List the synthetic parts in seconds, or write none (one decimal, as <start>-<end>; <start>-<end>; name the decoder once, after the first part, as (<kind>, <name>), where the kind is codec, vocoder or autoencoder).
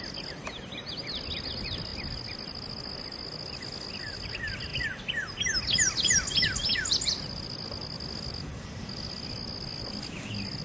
none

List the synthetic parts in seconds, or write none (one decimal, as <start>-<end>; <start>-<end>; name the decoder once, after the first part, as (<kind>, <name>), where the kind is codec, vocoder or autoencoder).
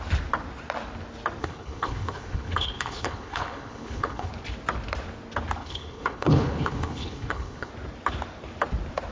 1.4-4.3 (codec, HILCodec); 5.6-7.7